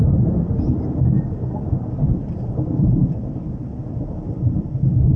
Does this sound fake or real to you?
real